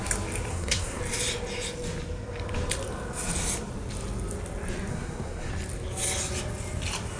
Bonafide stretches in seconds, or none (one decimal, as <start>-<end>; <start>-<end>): 0.0-0.5; 1.0-4.9; 5.5-7.2